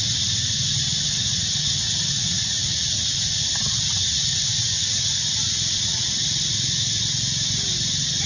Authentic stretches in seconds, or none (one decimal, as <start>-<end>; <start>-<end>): 0.0-1.3; 3.5-4.6; 6.1-8.3